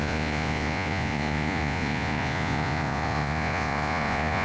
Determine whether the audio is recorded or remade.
remade